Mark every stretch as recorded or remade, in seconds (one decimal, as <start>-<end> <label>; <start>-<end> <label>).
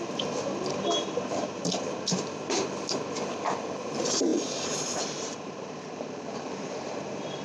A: 0.0-1.6 remade; 1.6-3.8 recorded; 3.8-7.4 remade